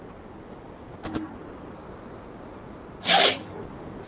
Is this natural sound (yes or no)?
yes